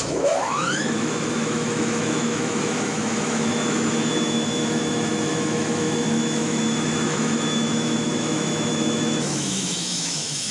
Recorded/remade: remade